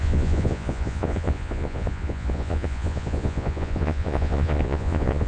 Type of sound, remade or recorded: remade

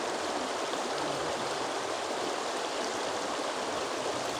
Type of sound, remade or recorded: recorded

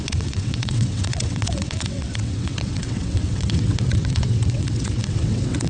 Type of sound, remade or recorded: remade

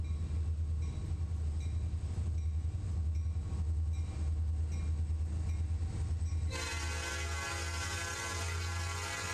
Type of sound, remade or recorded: recorded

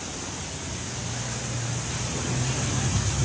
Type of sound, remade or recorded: recorded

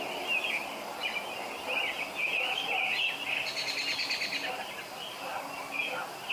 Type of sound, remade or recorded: recorded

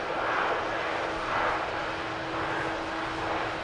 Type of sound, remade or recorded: recorded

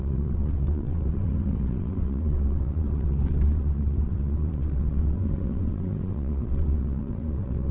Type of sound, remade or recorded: remade